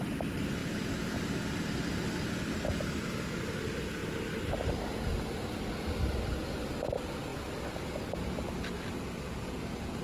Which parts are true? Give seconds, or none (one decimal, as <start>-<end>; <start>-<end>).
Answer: 0.0-4.0; 5.1-10.0